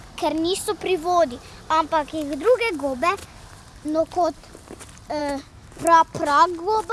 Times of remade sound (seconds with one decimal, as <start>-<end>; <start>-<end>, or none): 5.2-5.8